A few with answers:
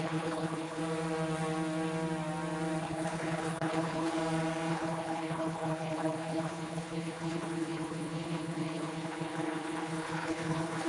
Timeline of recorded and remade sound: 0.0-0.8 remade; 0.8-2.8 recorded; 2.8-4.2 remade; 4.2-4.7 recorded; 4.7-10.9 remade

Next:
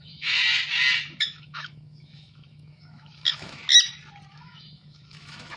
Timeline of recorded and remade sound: 0.0-0.4 remade; 0.4-1.2 recorded; 1.2-3.6 remade; 3.6-4.3 recorded; 4.3-5.6 remade

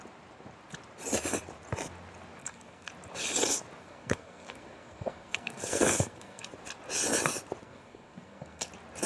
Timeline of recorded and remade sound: 0.0-2.4 recorded; 2.4-2.9 remade; 2.9-3.8 recorded; 3.8-6.5 remade; 6.5-7.6 recorded; 7.6-8.7 remade; 8.7-9.1 recorded

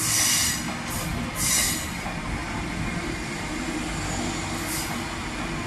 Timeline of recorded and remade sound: 0.0-2.4 recorded; 2.4-3.9 remade; 3.9-5.7 recorded

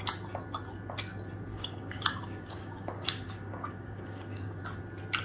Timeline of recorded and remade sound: 0.0-1.5 recorded; 1.5-4.6 remade; 4.6-5.2 recorded

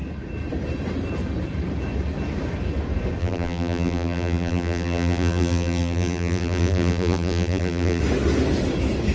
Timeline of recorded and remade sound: 0.0-3.2 recorded; 3.2-8.0 remade; 8.0-9.1 recorded